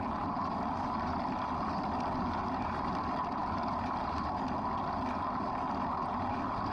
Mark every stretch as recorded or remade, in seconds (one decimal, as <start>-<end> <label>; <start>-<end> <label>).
0.0-6.7 recorded